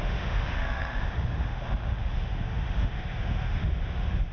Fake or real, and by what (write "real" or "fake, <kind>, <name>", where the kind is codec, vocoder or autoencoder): fake, autoencoder, DAC-VAE